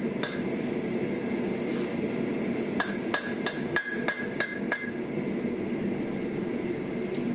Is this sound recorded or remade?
recorded